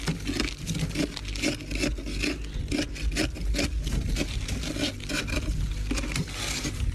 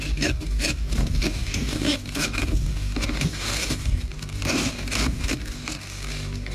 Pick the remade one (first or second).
second